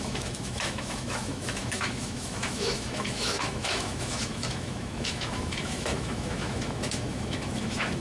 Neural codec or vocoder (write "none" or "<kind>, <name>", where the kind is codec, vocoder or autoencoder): autoencoder, DAC-VAE